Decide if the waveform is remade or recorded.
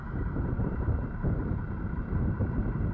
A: remade